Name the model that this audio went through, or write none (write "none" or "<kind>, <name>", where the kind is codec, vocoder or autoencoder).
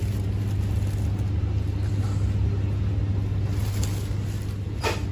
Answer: none